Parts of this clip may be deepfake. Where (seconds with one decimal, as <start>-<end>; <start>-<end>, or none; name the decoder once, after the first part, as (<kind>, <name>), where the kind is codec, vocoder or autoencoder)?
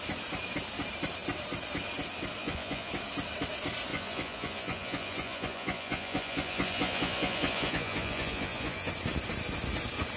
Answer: 2.4-2.9 (vocoder, Vocos); 3.9-8.9